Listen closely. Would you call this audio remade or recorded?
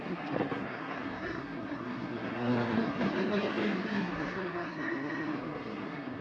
remade